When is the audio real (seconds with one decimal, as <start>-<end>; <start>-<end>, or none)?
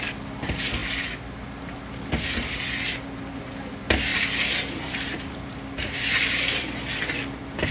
0.0-4.1; 7.2-7.7